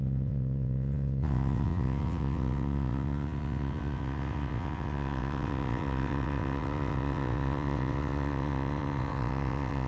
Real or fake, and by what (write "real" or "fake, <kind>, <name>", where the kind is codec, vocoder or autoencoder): fake, vocoder, WaveNeXt